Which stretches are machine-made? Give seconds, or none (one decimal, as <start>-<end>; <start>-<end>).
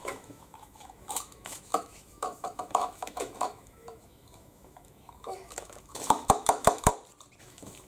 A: 0.0-6.9; 7.4-7.9